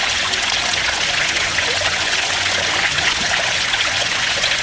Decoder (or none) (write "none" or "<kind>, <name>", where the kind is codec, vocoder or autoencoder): vocoder, Vocos